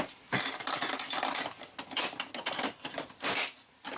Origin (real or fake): real